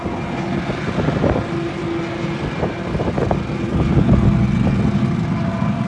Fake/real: real